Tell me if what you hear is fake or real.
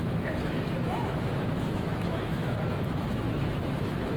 fake